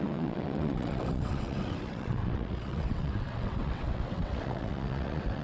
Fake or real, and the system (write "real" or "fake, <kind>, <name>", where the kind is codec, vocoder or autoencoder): fake, vocoder, WaveNeXt